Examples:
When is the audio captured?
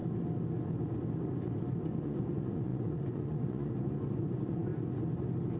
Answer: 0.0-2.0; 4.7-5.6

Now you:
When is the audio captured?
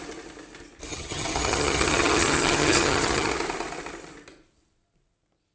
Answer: 0.0-0.9; 3.3-5.5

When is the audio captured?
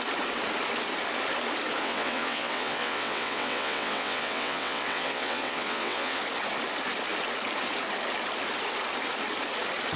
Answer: 0.0-1.8; 6.2-10.0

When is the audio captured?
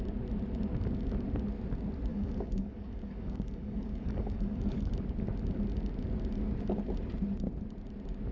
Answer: 0.0-2.1; 4.9-8.3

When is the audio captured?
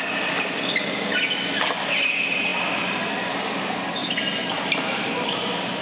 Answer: 0.0-5.8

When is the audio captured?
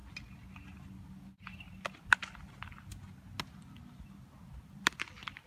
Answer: 0.0-1.0; 2.2-4.4